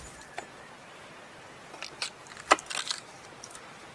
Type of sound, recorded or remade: remade